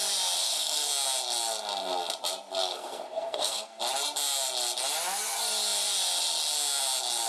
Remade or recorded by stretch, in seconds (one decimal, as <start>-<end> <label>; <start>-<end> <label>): 0.0-0.4 recorded; 0.4-0.9 remade; 0.9-2.6 recorded; 2.6-3.8 remade; 3.8-7.3 recorded